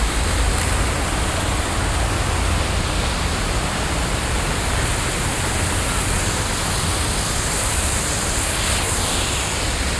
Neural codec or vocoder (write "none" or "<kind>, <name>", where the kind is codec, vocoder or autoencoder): none